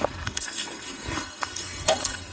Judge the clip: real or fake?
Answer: fake